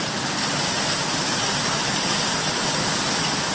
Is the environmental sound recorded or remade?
recorded